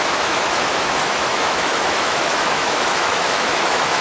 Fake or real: fake